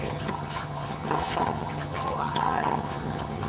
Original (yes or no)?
no